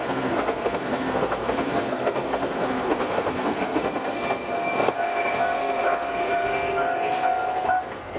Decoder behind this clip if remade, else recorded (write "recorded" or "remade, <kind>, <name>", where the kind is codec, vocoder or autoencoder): remade, codec, SNAC